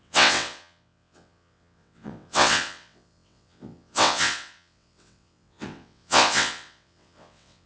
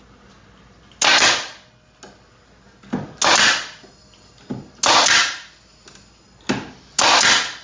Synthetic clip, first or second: first